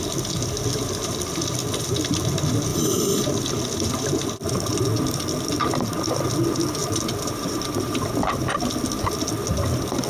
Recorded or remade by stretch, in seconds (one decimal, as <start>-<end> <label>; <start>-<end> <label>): 0.0-6.8 recorded; 6.8-8.1 remade; 8.1-10.1 recorded